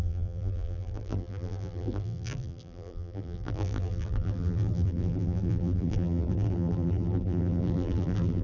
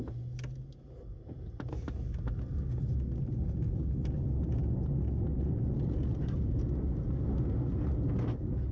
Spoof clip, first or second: first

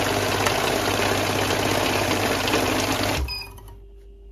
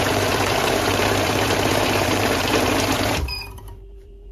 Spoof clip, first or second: second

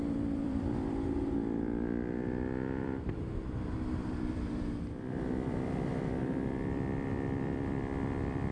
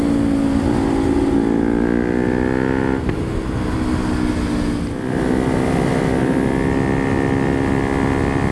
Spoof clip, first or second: first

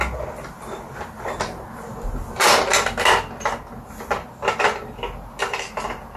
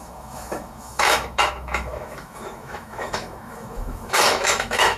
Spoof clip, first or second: second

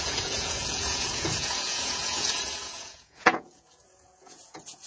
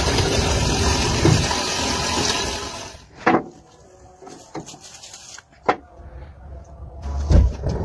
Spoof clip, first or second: first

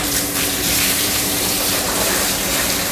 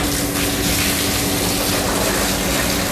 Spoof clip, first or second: first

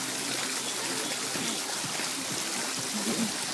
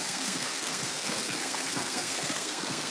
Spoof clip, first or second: second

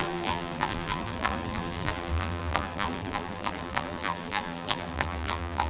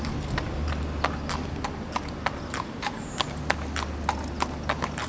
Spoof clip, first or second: first